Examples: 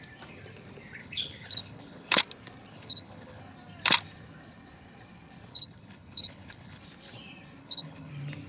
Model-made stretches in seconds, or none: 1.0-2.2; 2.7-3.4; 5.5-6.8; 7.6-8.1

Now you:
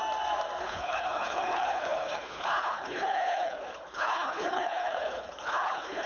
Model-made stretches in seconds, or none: 0.6-6.1

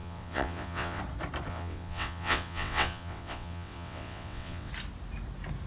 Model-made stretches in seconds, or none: 0.0-1.0; 1.5-4.7

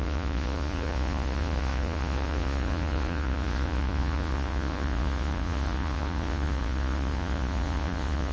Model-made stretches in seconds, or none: 0.0-8.3